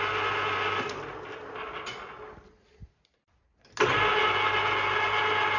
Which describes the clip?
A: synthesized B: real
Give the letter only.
B